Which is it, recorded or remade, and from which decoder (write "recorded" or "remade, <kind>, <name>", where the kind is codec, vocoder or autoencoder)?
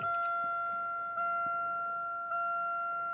recorded